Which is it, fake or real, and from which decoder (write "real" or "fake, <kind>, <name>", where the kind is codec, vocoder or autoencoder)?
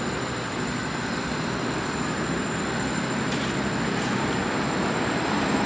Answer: fake, vocoder, BigVGAN v2